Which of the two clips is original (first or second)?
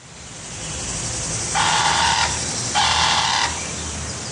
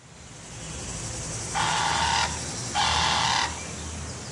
second